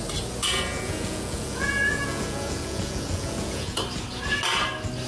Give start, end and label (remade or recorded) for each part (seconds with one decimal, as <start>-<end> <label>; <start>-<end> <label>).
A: 0.0-0.7 recorded; 0.7-3.8 remade; 3.8-5.1 recorded